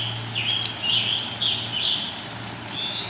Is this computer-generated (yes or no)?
no